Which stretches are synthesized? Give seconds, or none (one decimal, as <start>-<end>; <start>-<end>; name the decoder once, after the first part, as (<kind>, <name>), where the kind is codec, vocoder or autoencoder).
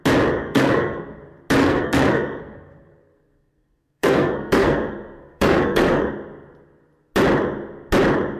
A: 0.4-1.2 (codec, SNAC); 1.6-6.1